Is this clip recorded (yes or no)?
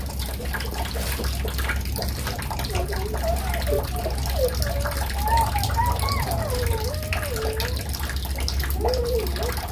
yes